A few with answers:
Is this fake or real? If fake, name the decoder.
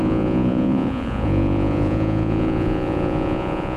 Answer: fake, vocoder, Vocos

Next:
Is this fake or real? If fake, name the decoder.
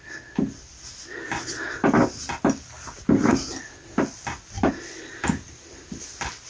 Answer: real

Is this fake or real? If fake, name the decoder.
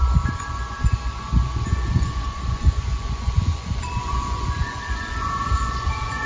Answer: fake, vocoder, Vocos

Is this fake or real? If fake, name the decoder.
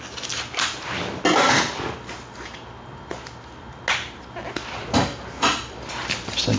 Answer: real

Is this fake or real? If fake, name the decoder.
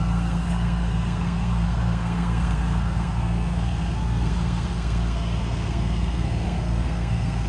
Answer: fake, codec, SNAC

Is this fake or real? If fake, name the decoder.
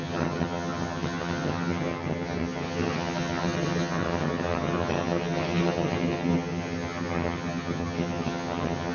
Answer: fake, vocoder, HiFi-GAN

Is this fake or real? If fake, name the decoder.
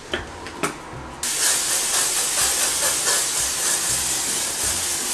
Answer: real